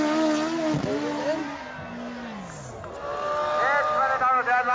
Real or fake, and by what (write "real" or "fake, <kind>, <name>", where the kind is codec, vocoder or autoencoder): real